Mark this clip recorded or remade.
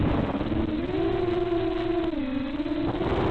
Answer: recorded